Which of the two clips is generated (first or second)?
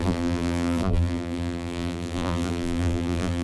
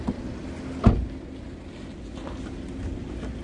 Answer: first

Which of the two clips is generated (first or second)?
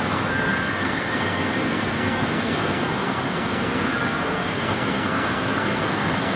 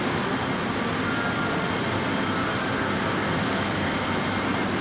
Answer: first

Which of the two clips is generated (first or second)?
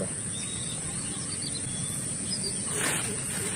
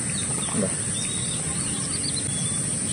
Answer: first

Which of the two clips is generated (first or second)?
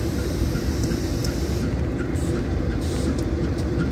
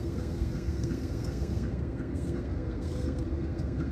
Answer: second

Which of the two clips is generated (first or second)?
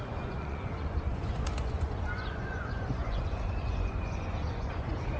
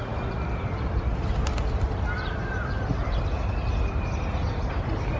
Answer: first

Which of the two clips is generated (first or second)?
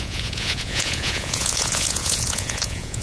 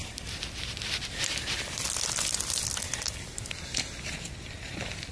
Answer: first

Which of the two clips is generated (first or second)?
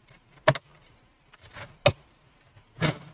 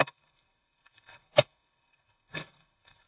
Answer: second